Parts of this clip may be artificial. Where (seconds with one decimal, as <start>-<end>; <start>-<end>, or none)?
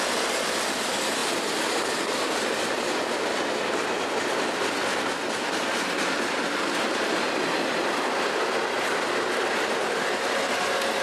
none